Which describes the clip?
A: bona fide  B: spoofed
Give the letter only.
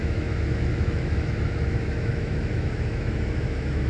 B